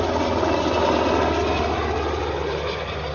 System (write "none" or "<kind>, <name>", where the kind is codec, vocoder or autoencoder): none